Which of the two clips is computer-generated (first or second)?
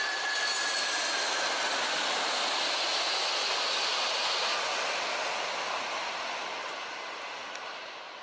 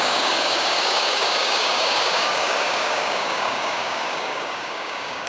second